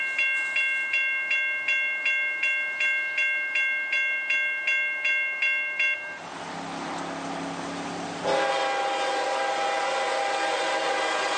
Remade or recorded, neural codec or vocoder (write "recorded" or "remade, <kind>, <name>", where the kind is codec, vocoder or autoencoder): recorded